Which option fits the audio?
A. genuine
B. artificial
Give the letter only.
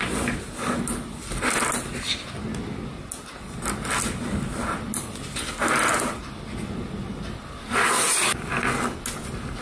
A